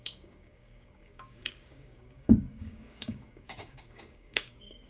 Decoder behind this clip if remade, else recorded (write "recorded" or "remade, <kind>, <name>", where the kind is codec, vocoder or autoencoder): remade, codec, DAC